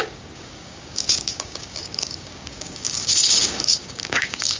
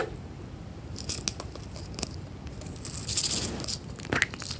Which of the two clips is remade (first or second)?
first